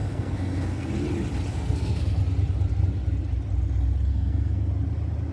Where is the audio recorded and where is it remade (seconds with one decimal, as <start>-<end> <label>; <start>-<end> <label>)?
0.0-0.9 remade; 0.9-1.5 recorded; 1.5-2.2 remade; 2.2-4.1 recorded; 4.1-4.7 remade; 4.7-5.3 recorded